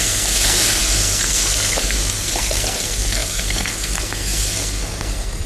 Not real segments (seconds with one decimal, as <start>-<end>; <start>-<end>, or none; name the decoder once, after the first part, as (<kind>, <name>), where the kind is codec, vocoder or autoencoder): 0.0-5.5 (codec, SNAC)